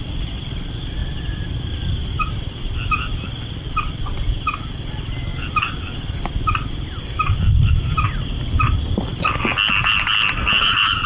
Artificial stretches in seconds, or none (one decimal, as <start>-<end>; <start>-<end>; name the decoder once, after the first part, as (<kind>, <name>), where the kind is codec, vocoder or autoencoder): 0.0-5.3 (vocoder, BigVGAN v2); 6.7-9.1; 10.3-11.1